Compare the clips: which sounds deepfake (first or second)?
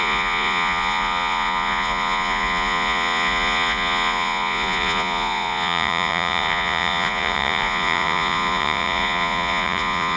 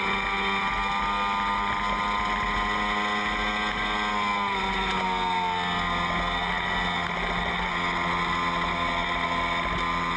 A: first